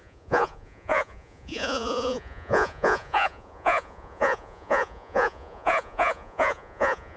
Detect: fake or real fake